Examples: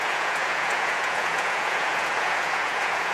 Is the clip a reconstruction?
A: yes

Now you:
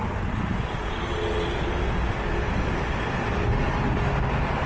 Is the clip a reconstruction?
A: no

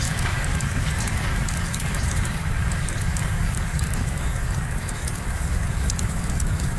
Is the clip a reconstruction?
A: yes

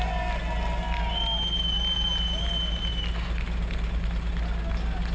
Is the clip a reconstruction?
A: no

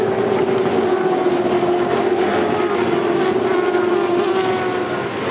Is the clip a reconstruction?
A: no